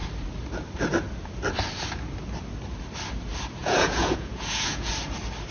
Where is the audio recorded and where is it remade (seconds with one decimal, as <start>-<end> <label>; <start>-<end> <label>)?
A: 0.0-3.6 recorded; 3.6-4.9 remade; 4.9-5.5 recorded